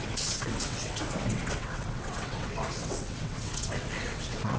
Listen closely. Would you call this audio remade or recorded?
remade